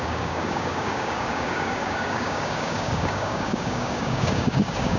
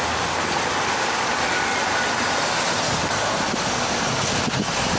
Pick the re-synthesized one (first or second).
first